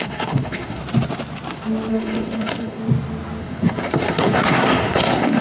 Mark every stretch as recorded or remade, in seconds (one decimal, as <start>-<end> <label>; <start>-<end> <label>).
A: 0.0-0.8 remade; 0.8-1.9 recorded; 1.9-2.8 remade; 2.8-3.4 recorded; 3.4-5.4 remade